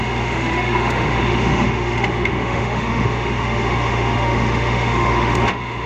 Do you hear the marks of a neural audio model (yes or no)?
yes